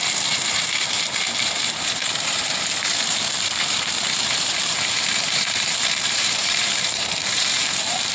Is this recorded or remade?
remade